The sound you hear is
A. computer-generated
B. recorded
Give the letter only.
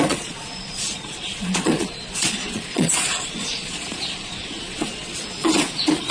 A